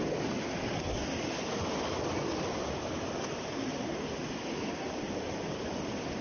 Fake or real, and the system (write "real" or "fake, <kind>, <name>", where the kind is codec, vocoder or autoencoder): real